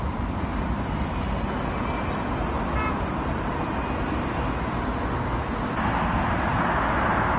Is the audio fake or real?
real